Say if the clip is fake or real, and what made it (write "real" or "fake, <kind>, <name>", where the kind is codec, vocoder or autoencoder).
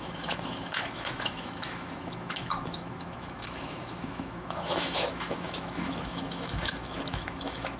fake, autoencoder, DAC-VAE